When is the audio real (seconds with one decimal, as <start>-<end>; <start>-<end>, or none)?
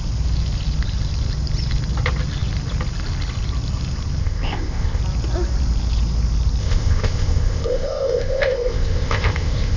0.0-4.2; 5.0-6.6